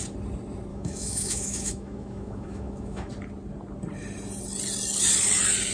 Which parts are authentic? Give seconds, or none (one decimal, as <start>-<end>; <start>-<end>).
0.0-0.7; 3.1-5.7

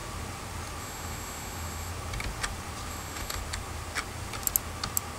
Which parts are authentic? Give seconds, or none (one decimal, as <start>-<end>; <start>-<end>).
0.0-0.8; 1.9-2.9; 3.4-5.2

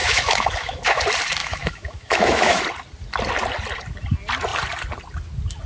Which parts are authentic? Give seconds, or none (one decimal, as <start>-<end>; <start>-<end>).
1.0-1.4; 2.6-5.7

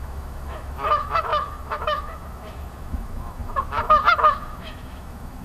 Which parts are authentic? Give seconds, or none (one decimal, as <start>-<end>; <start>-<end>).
none

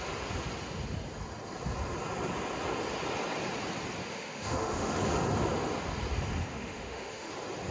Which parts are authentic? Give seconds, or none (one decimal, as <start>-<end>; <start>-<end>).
0.0-4.0; 5.0-6.5; 7.3-7.7

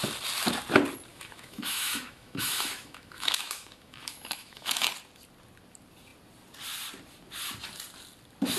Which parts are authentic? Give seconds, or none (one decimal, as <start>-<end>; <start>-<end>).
0.0-1.1; 4.9-8.6

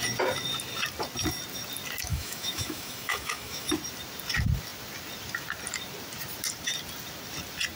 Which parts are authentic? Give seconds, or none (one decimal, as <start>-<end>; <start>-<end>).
0.0-2.1; 3.7-7.8

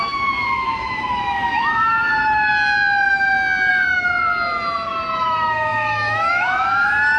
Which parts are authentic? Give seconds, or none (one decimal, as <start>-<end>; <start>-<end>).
2.5-3.7; 4.2-5.2